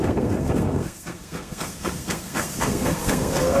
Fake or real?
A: fake